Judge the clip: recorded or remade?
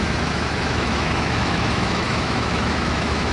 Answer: remade